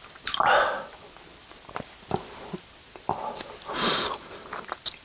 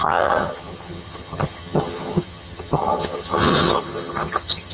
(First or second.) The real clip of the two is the first